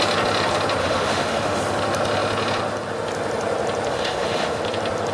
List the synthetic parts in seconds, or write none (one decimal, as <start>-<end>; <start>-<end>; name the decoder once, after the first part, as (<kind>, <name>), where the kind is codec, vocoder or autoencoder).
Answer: 0.8-1.6 (autoencoder, DAC-VAE); 3.9-4.6